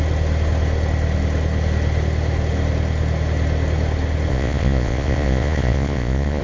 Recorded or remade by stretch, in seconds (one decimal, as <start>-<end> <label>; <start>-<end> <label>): 0.0-4.3 recorded; 4.3-6.4 remade